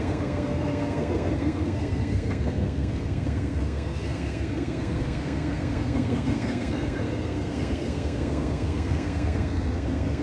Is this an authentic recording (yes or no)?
no